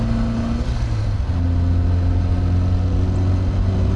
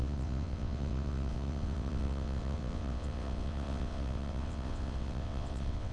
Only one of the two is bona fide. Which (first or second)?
first